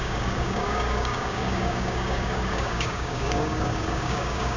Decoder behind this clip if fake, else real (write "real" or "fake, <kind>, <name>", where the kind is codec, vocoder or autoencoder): fake, codec, DAC